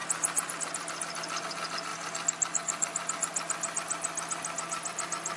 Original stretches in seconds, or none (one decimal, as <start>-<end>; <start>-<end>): 0.0-5.4